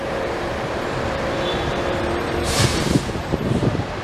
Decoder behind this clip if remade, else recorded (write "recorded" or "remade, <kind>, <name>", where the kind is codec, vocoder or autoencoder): remade, vocoder, BigVGAN v2